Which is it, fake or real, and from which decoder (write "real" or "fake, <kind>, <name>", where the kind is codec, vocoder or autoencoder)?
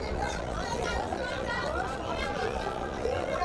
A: fake, vocoder, Vocos